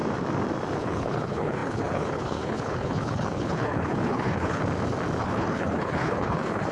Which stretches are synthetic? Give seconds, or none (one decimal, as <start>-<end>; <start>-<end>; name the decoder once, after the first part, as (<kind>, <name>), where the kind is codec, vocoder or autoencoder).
0.8-4.6 (codec, HILCodec); 5.2-6.7